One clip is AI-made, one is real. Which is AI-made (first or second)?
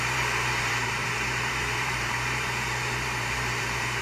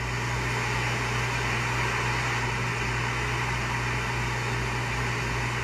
first